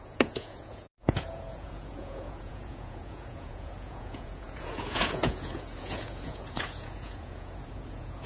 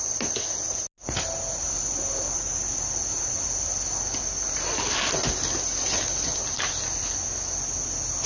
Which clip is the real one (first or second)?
second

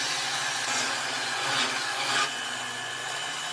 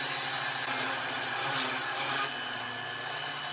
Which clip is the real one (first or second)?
second